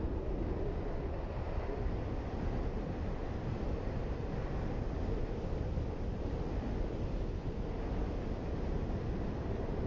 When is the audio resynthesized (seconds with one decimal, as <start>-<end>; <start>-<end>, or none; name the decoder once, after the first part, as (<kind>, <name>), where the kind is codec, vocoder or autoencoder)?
none